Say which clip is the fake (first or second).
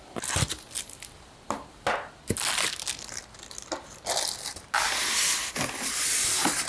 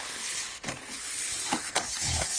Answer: second